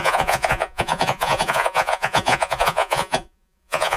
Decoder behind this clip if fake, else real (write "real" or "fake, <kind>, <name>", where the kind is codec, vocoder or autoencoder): fake, vocoder, Vocos